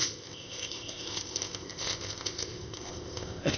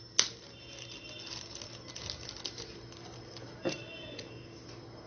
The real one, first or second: second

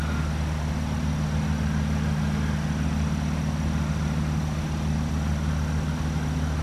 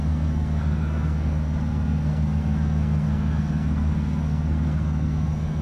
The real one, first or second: first